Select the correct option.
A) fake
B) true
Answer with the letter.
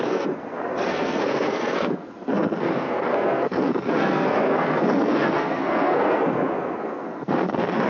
A